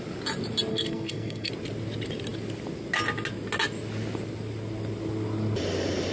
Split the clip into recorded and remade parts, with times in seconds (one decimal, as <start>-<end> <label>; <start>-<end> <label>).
0.0-0.7 recorded; 0.7-1.5 remade; 1.5-6.1 recorded

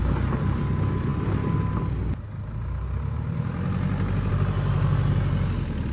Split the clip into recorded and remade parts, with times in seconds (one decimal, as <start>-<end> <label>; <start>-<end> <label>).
0.0-5.9 recorded

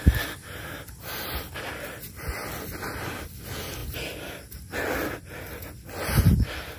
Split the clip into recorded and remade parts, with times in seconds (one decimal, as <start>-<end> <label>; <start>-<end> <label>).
0.0-6.8 recorded

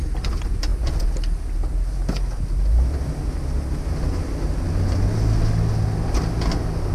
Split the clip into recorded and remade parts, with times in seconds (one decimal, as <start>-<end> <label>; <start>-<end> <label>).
0.0-6.9 recorded

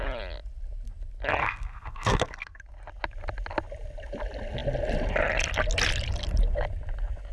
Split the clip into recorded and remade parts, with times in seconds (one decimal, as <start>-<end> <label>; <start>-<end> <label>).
0.0-1.4 recorded; 1.4-2.6 remade; 2.6-7.3 recorded

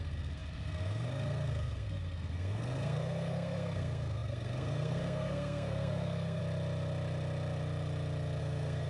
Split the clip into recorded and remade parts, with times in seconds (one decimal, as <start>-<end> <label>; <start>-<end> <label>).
0.0-6.4 remade; 6.4-8.4 recorded; 8.4-8.9 remade

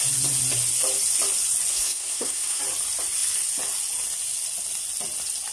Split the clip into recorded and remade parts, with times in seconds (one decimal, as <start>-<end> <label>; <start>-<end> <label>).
0.0-1.7 recorded; 1.7-2.6 remade; 2.6-5.5 recorded